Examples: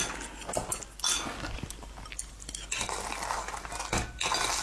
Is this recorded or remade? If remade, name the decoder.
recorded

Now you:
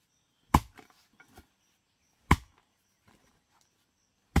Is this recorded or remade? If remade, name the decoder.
recorded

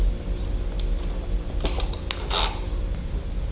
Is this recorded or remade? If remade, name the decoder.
recorded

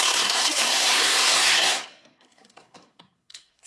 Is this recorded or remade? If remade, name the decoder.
remade, codec, SNAC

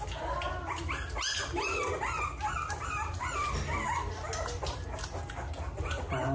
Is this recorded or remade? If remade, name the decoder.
recorded